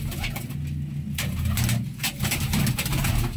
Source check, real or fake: real